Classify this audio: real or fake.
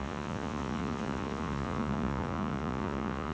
fake